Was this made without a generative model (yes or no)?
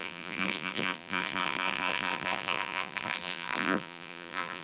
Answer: no